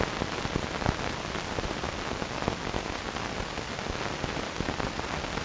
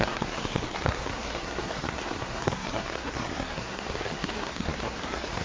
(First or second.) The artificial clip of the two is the second